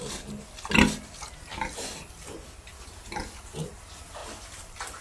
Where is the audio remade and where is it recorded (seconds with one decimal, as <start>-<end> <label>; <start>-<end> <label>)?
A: 0.0-4.2 recorded; 4.2-5.0 remade